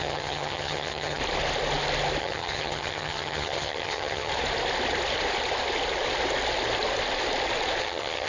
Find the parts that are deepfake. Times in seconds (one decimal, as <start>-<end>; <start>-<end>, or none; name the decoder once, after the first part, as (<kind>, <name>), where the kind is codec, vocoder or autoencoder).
0.0-1.2 (vocoder, HiFi-GAN); 2.2-4.3; 7.8-8.3